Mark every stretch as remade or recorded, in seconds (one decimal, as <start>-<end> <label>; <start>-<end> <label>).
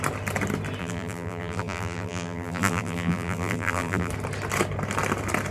0.0-0.8 recorded; 0.8-4.1 remade; 4.1-5.5 recorded